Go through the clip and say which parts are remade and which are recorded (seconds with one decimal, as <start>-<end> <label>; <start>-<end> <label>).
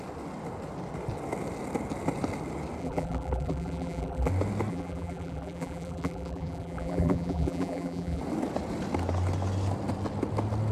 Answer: 0.0-2.8 recorded; 2.8-4.3 remade; 4.3-4.7 recorded; 4.7-8.2 remade; 8.2-10.7 recorded